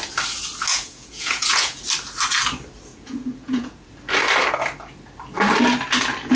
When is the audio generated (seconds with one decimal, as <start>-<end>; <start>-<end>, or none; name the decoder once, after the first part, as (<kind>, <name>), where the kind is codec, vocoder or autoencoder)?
0.7-1.8 (vocoder, Vocos); 2.9-3.9